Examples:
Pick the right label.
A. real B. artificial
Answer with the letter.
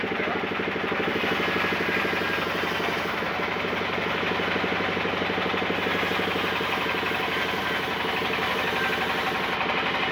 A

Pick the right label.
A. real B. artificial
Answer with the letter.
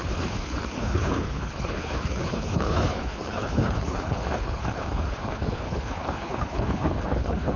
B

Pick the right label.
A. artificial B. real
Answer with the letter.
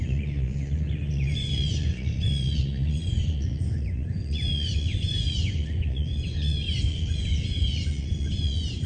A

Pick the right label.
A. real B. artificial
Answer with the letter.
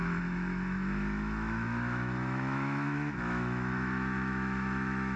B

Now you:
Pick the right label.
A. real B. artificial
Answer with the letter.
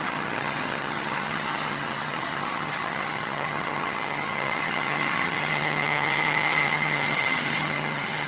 B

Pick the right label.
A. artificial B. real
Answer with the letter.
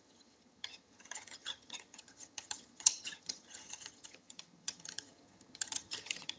A